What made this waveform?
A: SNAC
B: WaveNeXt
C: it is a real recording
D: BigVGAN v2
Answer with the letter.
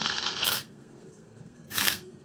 A